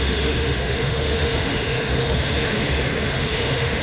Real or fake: fake